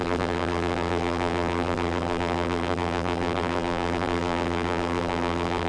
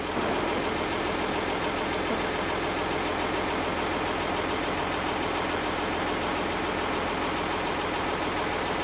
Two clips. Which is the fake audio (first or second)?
first